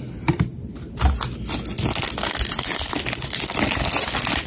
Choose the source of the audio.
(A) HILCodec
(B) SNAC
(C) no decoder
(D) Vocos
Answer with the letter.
C